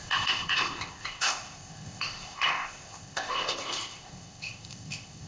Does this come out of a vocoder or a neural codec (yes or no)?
yes